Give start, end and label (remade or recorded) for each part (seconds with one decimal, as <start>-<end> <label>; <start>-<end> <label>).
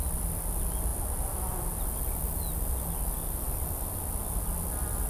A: 0.0-5.1 recorded